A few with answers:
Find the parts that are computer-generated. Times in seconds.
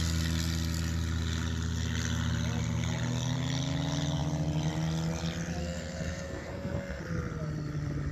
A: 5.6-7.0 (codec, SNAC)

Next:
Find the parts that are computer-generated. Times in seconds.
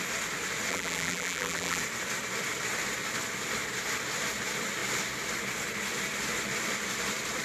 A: 0.7-1.8 (vocoder, BigVGAN v2)